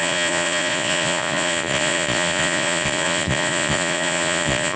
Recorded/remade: remade